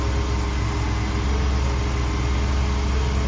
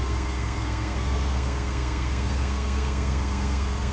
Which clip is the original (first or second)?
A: first